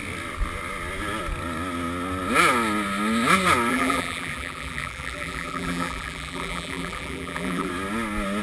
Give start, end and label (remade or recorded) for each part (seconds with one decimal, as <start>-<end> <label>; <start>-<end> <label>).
0.0-3.7 recorded; 3.7-7.7 remade; 7.7-8.4 recorded